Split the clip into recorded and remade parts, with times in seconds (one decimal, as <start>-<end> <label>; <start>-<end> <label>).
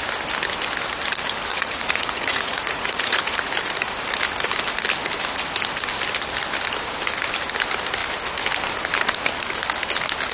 0.0-1.5 recorded; 1.5-3.3 remade; 3.3-10.3 recorded